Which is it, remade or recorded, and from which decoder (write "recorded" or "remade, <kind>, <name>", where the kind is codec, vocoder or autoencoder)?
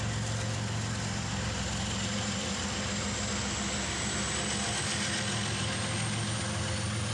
recorded